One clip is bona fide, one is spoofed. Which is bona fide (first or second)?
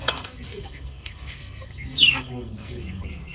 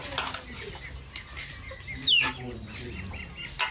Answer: second